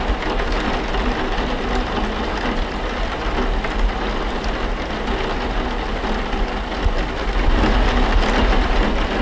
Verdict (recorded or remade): recorded